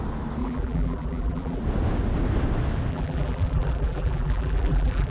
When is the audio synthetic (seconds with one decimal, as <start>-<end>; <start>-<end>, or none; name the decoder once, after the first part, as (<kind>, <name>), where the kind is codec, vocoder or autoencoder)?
0.4-1.6 (vocoder, BigVGAN v2); 2.9-5.1